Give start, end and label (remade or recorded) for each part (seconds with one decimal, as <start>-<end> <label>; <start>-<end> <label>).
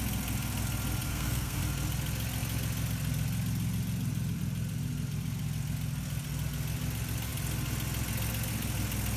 0.0-1.1 recorded; 1.1-1.6 remade; 1.6-9.2 recorded